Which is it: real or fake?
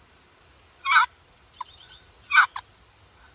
real